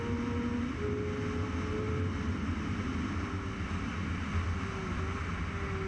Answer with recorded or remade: recorded